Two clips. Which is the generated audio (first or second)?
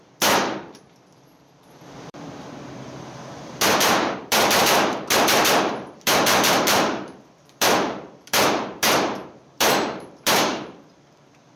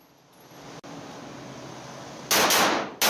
first